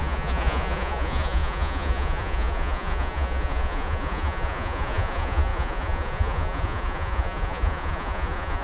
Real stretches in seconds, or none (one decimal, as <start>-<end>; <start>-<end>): none